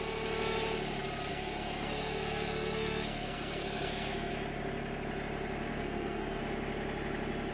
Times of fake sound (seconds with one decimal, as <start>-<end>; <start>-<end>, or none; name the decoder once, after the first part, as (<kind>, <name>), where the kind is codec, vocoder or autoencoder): 1.3-4.3 (codec, SNAC); 5.7-6.4